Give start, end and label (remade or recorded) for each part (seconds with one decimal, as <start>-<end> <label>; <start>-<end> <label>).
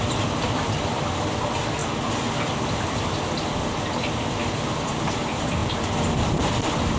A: 0.0-7.0 recorded